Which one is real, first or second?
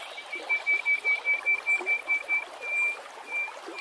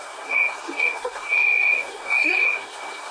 first